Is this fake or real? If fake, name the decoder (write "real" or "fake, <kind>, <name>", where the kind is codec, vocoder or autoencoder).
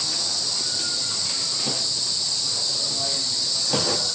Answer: real